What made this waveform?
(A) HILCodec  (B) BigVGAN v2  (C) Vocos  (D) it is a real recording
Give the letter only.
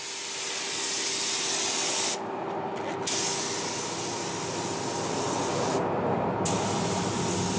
D